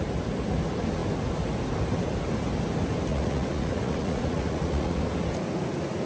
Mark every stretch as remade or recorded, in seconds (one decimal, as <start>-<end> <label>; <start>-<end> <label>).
0.0-3.1 recorded; 3.1-5.0 remade; 5.0-6.1 recorded